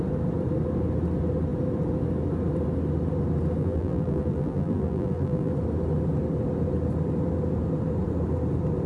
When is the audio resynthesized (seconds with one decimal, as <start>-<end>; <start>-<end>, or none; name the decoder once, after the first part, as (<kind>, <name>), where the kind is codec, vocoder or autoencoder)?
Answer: 3.6-5.5 (vocoder, BigVGAN v2)